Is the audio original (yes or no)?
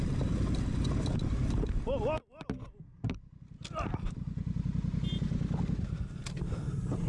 yes